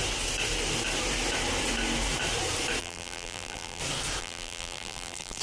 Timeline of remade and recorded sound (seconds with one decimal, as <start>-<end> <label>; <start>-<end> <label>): 0.0-2.8 recorded; 2.8-3.8 remade; 3.8-4.2 recorded; 4.2-5.4 remade